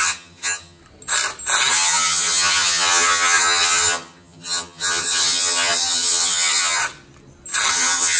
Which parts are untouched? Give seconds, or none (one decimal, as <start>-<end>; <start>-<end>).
0.8-1.7; 6.8-7.7